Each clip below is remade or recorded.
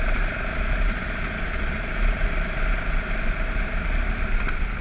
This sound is recorded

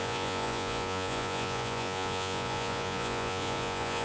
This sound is remade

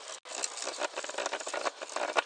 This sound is recorded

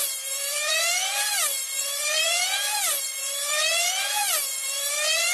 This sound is remade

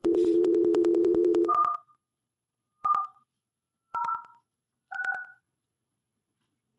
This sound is remade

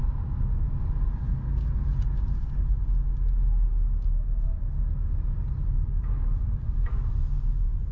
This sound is recorded